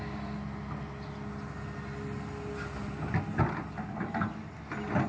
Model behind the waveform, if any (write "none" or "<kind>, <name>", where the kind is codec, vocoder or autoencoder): none